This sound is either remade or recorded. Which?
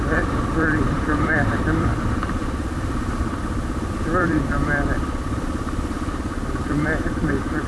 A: remade